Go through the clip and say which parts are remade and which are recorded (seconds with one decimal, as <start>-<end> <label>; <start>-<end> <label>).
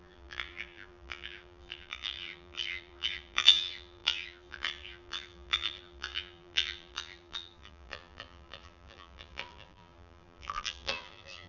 0.0-11.5 remade